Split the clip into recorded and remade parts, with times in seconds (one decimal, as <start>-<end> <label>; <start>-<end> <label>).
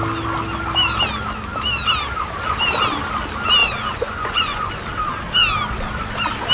0.0-3.6 recorded; 3.6-4.7 remade; 4.7-6.5 recorded